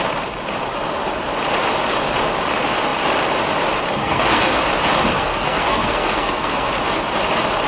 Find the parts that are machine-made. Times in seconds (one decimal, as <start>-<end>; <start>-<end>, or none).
4.0-4.6; 5.1-6.7